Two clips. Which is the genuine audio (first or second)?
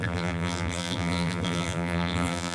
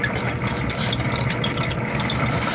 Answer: second